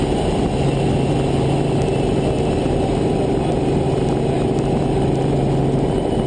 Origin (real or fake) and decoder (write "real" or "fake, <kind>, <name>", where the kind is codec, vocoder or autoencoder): real